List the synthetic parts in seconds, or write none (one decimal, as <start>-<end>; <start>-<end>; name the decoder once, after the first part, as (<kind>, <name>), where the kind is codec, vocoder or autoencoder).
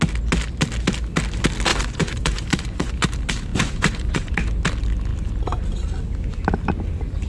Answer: 1.7-2.9 (vocoder, Vocos); 3.5-4.3